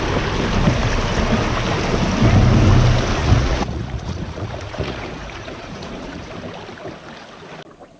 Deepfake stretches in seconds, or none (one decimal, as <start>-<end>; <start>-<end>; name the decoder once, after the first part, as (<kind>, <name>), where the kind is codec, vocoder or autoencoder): 3.2-6.3 (vocoder, Vocos)

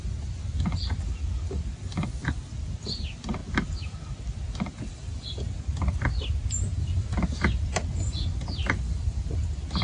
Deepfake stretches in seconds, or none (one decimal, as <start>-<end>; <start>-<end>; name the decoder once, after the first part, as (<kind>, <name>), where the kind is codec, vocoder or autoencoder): none